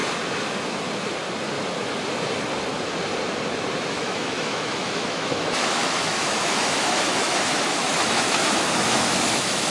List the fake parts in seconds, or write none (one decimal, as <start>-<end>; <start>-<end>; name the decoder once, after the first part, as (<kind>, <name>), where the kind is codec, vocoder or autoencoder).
3.9-9.7 (autoencoder, DAC-VAE)